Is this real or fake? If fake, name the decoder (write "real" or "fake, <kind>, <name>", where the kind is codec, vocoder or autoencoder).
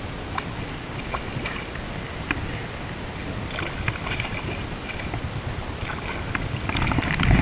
real